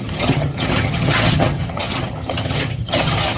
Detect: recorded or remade remade